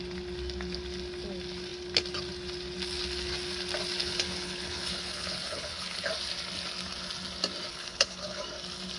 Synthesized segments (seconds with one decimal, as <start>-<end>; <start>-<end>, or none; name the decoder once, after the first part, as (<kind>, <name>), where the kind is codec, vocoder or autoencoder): 4.0-6.1 (codec, HILCodec); 7.7-8.4